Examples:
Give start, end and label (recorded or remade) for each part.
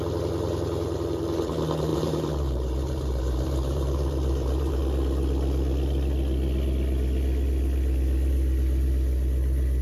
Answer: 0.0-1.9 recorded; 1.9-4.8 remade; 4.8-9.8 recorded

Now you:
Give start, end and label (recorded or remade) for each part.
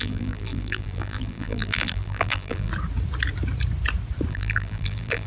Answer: 0.0-2.7 remade; 2.7-4.3 recorded; 4.3-5.3 remade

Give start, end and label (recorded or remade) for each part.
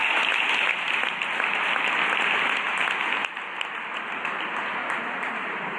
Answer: 0.0-5.8 recorded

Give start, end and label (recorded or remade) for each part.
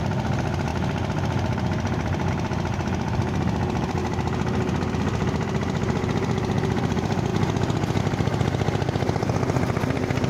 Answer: 0.0-4.0 remade; 4.0-4.9 recorded; 4.9-7.3 remade; 7.3-8.0 recorded; 8.0-10.3 remade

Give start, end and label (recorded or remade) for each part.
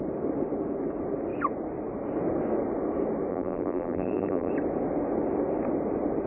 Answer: 0.0-3.3 recorded; 3.3-4.5 remade; 4.5-6.3 recorded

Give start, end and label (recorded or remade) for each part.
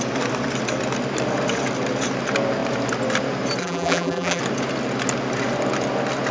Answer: 0.0-3.6 recorded; 3.6-4.4 remade; 4.4-6.3 recorded